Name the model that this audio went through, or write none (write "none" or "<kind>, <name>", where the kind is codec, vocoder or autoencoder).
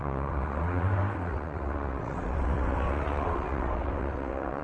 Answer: vocoder, WaveNeXt